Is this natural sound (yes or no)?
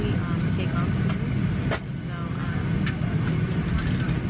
yes